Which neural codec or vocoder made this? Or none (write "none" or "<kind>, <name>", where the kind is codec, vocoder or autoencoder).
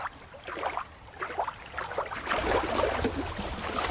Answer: vocoder, BigVGAN v2